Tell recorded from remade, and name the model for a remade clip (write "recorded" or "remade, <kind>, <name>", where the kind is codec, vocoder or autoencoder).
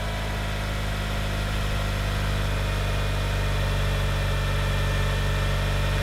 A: recorded